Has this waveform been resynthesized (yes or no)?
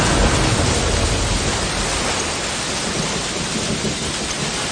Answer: no